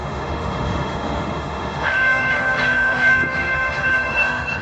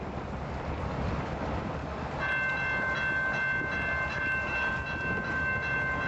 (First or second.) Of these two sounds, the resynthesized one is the first